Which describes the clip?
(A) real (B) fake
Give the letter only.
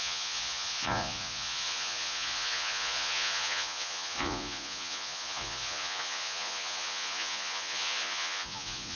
B